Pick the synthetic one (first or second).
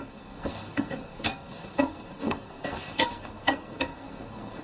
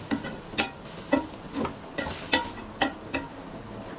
first